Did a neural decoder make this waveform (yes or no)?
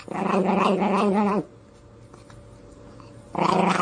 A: no